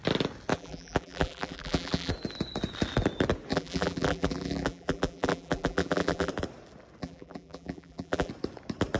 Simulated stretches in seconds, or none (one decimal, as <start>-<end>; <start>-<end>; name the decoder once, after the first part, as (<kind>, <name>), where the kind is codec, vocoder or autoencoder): 0.5-2.1 (vocoder, BigVGAN v2); 3.5-6.3; 7.0-8.3

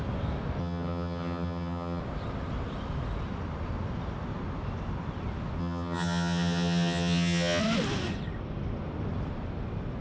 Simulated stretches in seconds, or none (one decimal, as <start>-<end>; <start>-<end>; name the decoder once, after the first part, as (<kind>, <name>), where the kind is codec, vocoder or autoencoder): 0.6-2.0 (vocoder, HiFi-GAN); 5.6-7.6